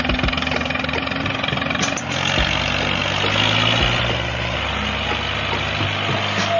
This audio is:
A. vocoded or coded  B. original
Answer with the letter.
B